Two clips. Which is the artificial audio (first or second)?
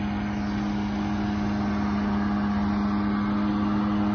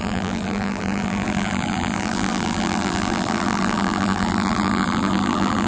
second